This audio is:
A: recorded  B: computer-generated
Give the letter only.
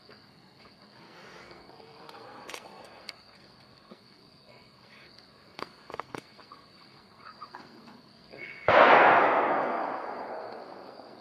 B